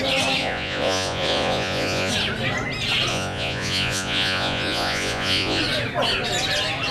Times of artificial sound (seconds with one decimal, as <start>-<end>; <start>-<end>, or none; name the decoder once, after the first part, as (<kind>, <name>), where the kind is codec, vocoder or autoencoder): 0.4-2.1 (vocoder, Vocos); 3.1-5.6